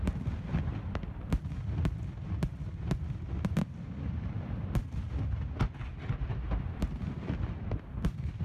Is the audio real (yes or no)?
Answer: yes